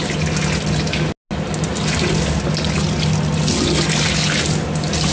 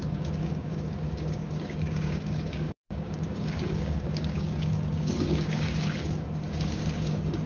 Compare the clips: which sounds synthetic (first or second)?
second